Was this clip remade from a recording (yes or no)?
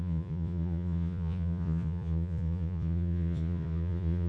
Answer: yes